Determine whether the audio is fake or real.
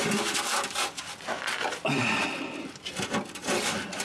fake